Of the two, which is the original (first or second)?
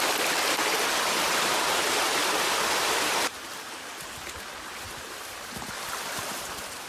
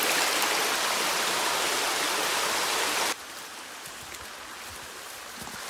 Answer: second